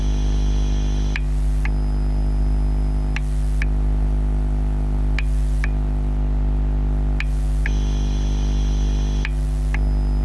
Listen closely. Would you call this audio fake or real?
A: real